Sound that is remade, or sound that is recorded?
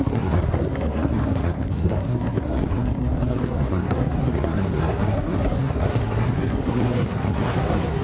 remade